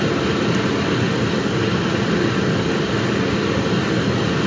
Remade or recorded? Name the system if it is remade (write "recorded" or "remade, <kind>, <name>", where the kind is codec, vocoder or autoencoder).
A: recorded